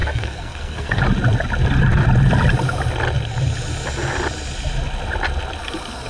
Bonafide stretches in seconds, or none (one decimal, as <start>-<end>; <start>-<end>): 1.0-6.1